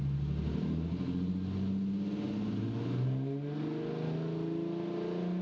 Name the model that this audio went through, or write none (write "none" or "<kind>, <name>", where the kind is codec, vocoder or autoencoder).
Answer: none